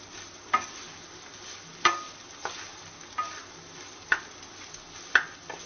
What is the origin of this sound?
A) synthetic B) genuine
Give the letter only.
B